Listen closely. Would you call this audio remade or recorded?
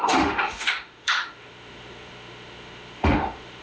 remade